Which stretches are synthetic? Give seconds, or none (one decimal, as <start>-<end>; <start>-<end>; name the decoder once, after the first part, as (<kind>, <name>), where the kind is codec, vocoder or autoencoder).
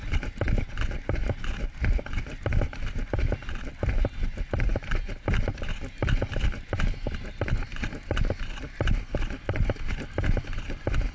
none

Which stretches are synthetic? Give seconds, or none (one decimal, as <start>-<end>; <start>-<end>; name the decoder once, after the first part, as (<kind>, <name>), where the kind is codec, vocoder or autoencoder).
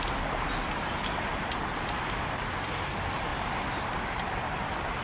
none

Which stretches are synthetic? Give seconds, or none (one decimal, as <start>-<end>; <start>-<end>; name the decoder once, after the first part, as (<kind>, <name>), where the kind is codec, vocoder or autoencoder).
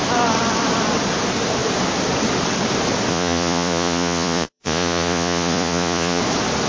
3.1-6.2 (vocoder, Vocos)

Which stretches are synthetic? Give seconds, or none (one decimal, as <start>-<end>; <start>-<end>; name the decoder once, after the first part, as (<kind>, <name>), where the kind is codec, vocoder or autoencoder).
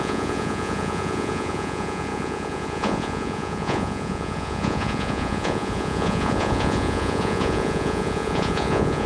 0.0-9.1 (vocoder, Vocos)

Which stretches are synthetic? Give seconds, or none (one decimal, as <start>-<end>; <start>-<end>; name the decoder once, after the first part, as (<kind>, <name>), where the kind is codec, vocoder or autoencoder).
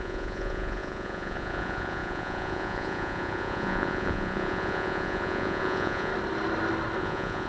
0.0-6.1 (vocoder, Vocos); 7.0-7.5